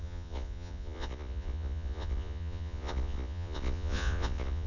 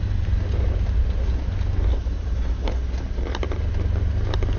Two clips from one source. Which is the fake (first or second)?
first